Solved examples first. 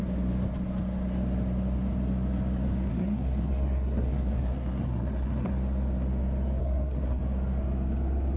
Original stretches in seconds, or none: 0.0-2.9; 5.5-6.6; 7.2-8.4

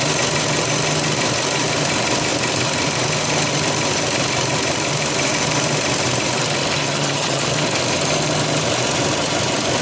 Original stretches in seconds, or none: 0.0-6.8; 7.4-9.8

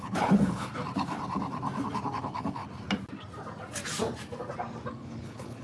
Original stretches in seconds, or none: 0.7-2.2; 2.6-4.9

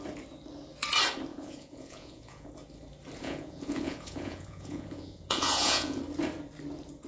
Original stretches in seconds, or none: 0.0-1.3; 2.5-3.2; 6.0-7.1

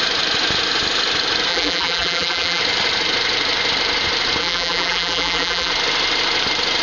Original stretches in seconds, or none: 0.0-1.5; 2.6-4.4; 5.7-6.8

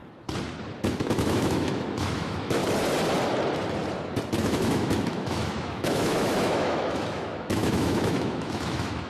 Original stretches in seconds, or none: 0.0-1.0; 2.6-4.4

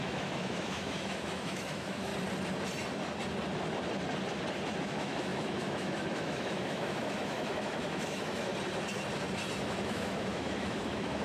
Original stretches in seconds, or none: 2.1-4.8; 8.5-9.6